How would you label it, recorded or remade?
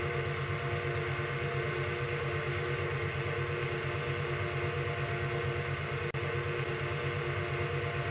recorded